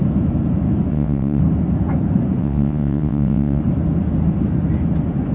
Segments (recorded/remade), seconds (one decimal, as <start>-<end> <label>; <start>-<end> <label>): 0.0-0.9 recorded; 0.9-1.4 remade; 1.4-2.4 recorded; 2.4-3.6 remade; 3.6-5.3 recorded

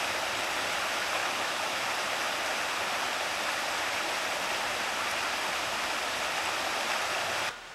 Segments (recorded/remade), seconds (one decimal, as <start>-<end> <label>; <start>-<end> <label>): 0.0-1.2 recorded; 1.2-1.9 remade; 1.9-7.7 recorded

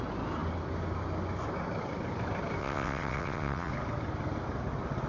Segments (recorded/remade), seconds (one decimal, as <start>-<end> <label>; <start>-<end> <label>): 0.0-2.6 recorded; 2.6-3.7 remade; 3.7-5.1 recorded

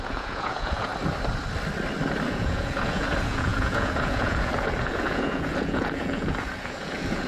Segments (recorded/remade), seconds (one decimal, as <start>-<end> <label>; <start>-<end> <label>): 0.0-0.9 remade; 0.9-2.3 recorded; 2.3-7.3 remade

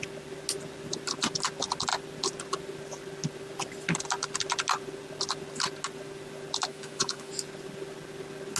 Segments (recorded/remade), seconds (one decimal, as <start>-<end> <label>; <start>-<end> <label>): 0.0-6.7 recorded; 6.7-7.3 remade; 7.3-8.6 recorded

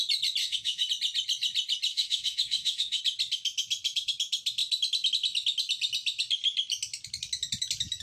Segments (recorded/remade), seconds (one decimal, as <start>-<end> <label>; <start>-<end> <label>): 0.0-0.4 recorded; 0.4-0.9 remade; 0.9-1.9 recorded; 1.9-3.0 remade; 3.0-8.0 recorded

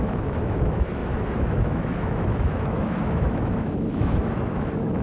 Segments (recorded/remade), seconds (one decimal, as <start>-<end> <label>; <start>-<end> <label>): 0.0-5.0 remade